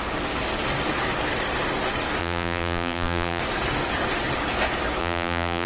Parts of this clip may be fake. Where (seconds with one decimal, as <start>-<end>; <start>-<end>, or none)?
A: 2.2-3.4; 5.0-5.7